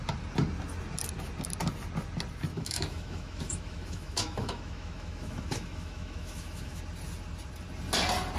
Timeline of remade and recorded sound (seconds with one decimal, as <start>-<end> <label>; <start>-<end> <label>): 0.0-2.5 recorded; 2.5-6.8 remade; 6.8-8.4 recorded